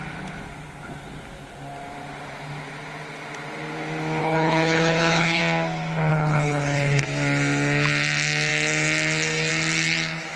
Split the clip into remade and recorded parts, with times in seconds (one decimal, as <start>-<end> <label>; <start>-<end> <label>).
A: 0.0-4.2 recorded; 4.2-5.4 remade; 5.4-6.1 recorded; 6.1-7.0 remade; 7.0-10.4 recorded